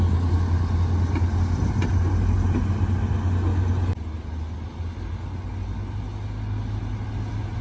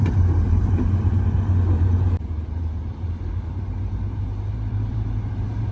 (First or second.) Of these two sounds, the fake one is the second